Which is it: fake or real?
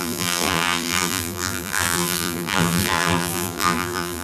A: fake